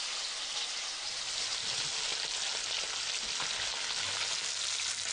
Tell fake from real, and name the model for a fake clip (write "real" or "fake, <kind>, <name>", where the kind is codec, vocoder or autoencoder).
real